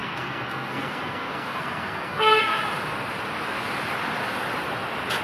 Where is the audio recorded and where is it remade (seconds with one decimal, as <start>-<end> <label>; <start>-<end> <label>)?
0.0-2.6 remade; 2.6-5.2 recorded